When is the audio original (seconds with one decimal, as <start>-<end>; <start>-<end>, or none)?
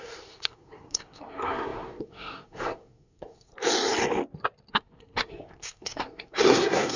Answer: 3.5-4.7